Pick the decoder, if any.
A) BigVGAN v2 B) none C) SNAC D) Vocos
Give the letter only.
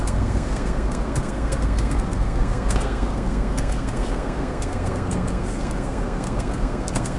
C